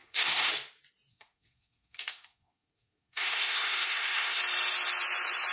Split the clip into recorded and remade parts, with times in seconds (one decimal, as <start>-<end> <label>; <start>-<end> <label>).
0.0-0.5 remade; 0.5-1.1 recorded; 1.1-4.4 remade; 4.4-5.5 recorded